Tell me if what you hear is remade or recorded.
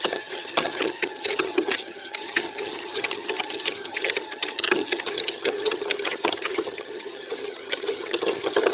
remade